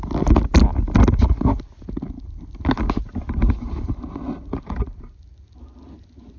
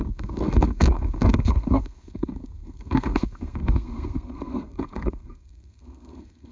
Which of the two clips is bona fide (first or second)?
first